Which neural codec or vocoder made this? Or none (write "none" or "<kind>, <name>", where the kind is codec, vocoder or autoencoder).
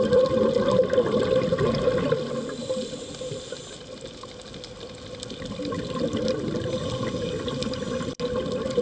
none